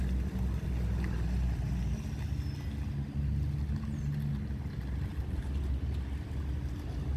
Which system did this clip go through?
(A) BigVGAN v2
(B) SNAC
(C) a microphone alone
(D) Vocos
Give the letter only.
C